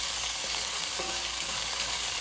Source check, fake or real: fake